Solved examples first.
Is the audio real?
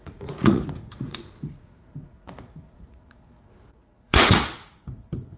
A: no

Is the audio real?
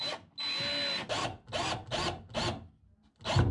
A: yes